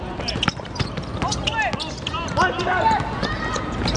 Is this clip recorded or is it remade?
recorded